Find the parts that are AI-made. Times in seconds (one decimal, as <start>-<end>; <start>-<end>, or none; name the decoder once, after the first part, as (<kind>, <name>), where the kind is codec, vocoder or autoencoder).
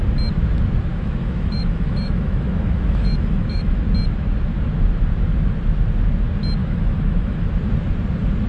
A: 0.9-3.8 (autoencoder, DAC-VAE); 6.6-7.5